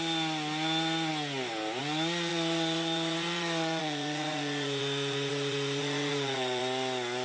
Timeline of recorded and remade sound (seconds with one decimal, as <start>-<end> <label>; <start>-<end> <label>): 0.0-2.3 recorded; 2.3-6.6 remade; 6.6-7.2 recorded